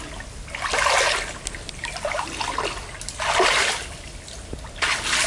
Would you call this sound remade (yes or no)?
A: no